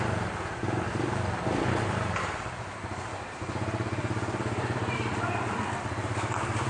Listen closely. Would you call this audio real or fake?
fake